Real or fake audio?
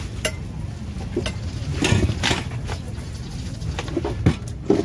real